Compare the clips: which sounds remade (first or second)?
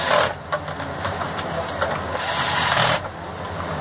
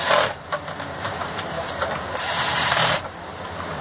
second